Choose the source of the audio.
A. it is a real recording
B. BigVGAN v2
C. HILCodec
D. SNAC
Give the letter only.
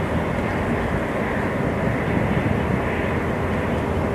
A